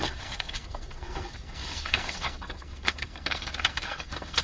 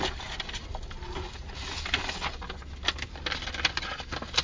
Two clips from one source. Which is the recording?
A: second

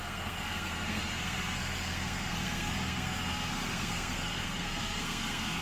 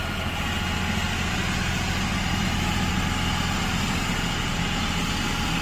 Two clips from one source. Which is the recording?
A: second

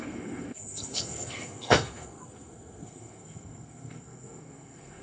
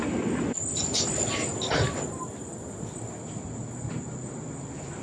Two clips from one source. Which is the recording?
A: second